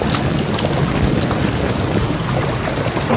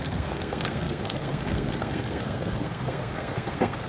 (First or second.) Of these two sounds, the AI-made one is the second